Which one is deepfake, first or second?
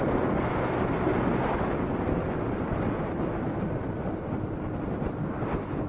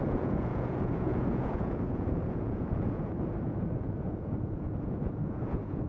second